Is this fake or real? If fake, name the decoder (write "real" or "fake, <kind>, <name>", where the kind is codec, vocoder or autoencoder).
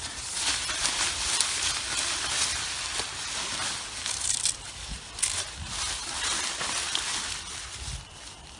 real